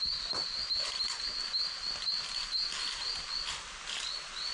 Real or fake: real